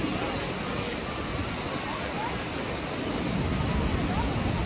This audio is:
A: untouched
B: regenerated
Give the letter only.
A